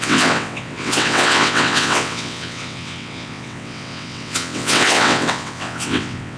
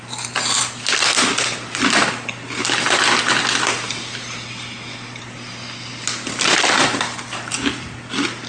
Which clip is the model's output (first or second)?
first